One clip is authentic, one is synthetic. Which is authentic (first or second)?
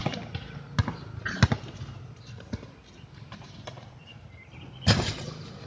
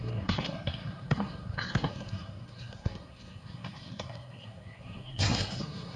first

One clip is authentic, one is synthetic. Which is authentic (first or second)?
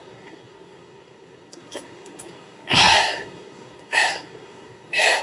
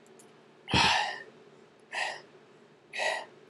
second